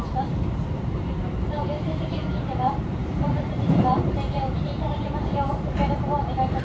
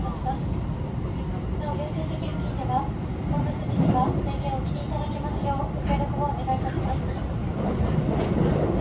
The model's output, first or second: first